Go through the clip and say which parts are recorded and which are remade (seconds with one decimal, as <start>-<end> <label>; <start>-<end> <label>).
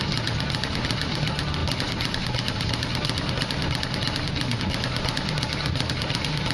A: 0.0-6.5 recorded